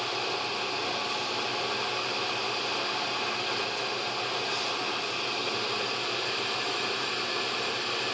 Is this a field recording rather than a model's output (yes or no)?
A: yes